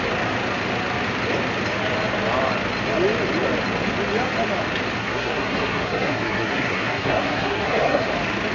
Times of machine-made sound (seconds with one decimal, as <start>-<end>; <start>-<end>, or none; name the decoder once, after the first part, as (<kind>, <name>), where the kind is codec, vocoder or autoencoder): 5.0-8.1 (codec, SNAC)